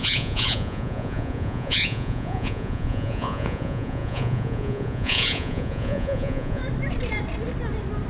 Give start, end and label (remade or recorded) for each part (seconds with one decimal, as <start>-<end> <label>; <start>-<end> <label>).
0.0-6.6 remade; 6.6-8.1 recorded